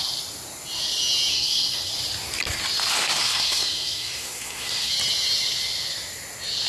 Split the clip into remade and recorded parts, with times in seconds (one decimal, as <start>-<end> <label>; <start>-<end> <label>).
0.0-1.3 recorded; 1.3-1.9 remade; 1.9-3.2 recorded; 3.2-4.9 remade; 4.9-6.7 recorded